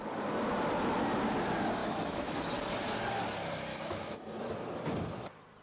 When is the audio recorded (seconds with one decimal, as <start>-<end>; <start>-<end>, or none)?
0.0-1.8; 2.4-3.7; 4.5-5.6